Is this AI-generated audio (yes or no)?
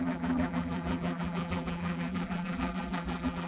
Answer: yes